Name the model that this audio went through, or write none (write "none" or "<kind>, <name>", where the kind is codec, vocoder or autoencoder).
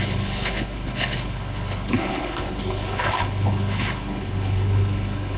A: codec, HILCodec